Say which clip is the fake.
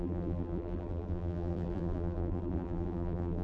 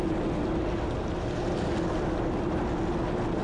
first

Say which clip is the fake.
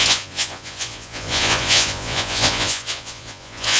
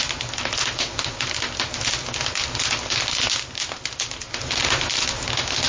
first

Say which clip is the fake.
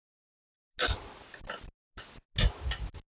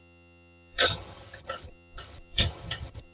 second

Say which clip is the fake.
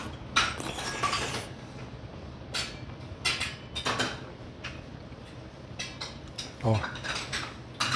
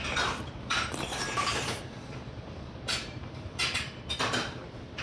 second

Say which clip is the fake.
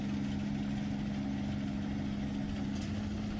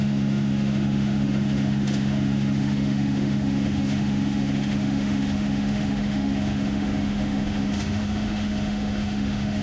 second